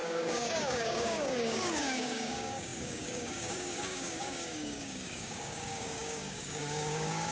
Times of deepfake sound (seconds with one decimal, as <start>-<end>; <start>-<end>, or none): 0.0-7.3